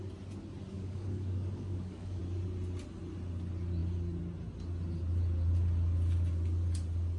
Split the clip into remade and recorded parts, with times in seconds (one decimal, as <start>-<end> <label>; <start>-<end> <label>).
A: 0.0-0.7 recorded; 0.7-2.2 remade; 2.2-7.2 recorded